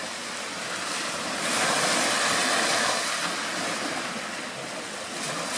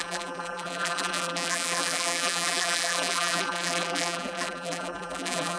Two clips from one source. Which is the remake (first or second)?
second